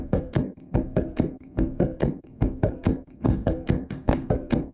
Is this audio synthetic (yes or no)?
yes